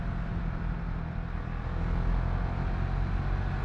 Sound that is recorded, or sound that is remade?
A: recorded